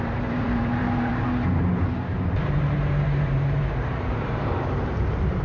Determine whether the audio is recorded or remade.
remade